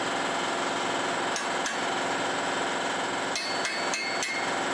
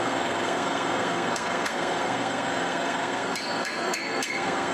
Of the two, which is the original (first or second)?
first